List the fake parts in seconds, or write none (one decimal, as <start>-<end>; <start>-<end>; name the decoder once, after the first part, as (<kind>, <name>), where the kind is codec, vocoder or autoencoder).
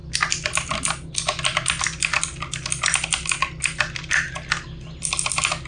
none